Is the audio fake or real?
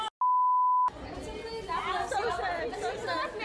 real